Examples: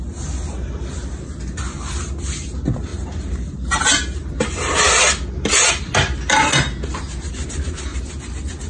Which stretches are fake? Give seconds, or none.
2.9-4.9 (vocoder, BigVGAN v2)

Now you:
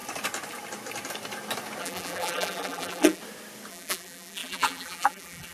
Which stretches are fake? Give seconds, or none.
1.8-3.2 (vocoder, BigVGAN v2); 3.7-5.5

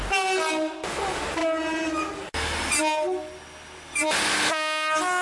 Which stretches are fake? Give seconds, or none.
none

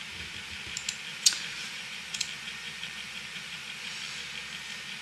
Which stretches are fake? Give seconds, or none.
1.1-4.1 (vocoder, Vocos)